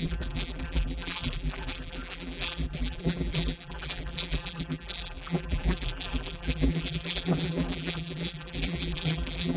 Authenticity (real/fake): fake